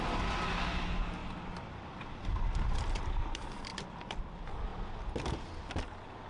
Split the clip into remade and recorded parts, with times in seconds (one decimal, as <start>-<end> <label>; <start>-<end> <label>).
0.0-1.2 recorded; 1.2-2.8 remade; 2.8-3.7 recorded; 3.7-4.2 remade; 4.2-6.3 recorded